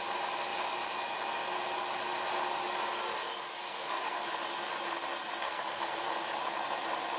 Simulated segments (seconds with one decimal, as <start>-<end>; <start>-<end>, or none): 3.6-4.2; 5.4-6.1